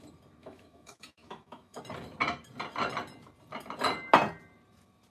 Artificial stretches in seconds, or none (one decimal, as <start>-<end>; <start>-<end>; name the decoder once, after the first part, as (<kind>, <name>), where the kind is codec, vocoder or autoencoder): 0.4-1.8 (autoencoder, DAC-VAE)